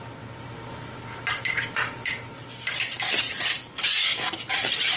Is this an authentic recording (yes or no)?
yes